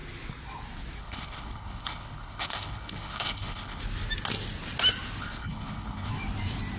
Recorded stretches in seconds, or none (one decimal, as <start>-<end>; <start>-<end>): 0.0-1.0; 3.8-5.2; 6.1-6.8